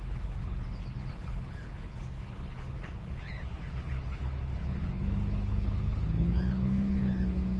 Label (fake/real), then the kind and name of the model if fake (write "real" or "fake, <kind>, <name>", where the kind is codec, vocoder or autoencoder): fake, codec, HILCodec